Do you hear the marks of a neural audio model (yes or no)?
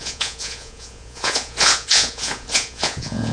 yes